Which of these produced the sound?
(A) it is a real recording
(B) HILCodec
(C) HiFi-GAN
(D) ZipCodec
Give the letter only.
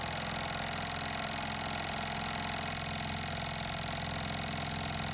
A